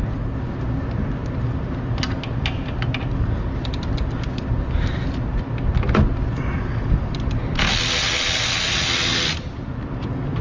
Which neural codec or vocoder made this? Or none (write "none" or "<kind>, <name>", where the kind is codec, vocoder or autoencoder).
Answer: none